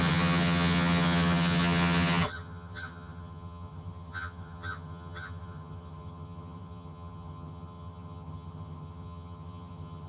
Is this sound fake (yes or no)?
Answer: yes